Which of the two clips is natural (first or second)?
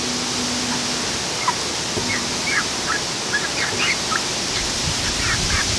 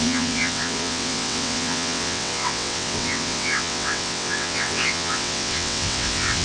first